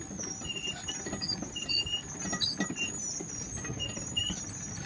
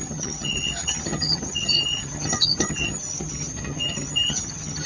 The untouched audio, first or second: first